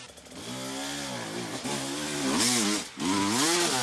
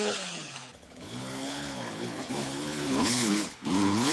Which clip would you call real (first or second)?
first